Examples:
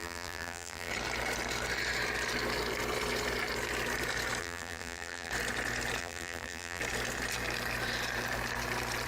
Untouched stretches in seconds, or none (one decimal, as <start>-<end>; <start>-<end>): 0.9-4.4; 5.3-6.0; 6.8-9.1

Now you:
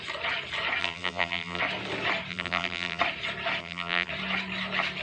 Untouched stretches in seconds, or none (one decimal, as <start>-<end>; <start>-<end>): 0.0-0.8; 1.6-2.3; 3.0-3.6; 4.1-5.0

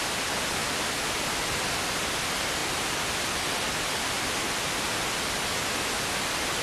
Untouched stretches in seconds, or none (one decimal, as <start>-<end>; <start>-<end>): 0.0-0.6; 1.4-6.6